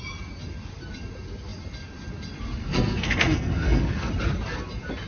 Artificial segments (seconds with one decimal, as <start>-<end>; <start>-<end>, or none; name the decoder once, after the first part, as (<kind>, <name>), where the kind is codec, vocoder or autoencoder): 2.6-4.1 (codec, SNAC)